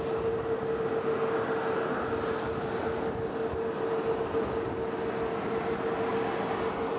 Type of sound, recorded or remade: recorded